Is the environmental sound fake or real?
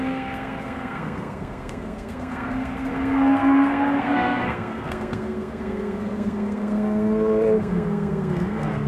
fake